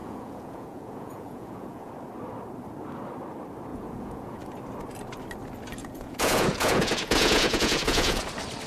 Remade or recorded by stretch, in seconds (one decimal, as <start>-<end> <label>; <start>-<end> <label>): 0.0-1.9 remade; 1.9-3.7 recorded; 3.7-4.4 remade; 4.4-5.8 recorded; 5.8-8.2 remade; 8.2-8.7 recorded

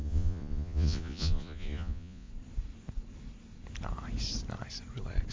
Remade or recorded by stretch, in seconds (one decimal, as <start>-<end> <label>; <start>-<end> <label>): 0.0-2.3 remade; 2.3-5.3 recorded

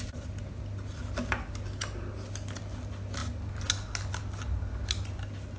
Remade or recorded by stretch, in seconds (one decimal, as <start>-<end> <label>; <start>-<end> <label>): 0.0-5.6 recorded

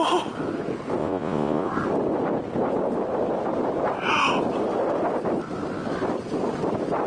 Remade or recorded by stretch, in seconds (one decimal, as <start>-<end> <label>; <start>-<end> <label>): 0.0-1.0 recorded; 1.0-1.7 remade; 1.7-7.1 recorded

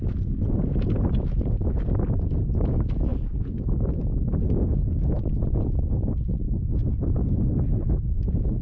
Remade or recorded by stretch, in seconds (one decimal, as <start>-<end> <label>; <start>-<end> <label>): 0.0-8.6 recorded